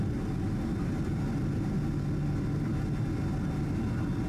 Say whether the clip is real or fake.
real